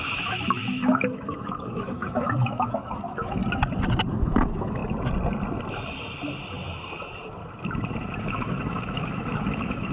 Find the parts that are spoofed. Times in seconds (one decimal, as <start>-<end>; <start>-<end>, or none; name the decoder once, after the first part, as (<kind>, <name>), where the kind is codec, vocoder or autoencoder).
0.0-3.4 (autoencoder, DAC-VAE); 4.1-4.8; 8.2-9.9